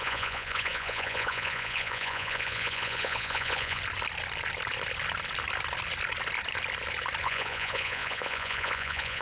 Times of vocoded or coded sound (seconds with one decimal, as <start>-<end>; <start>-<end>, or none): 0.0-3.8; 7.2-9.2